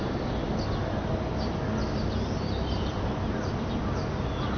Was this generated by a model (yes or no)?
no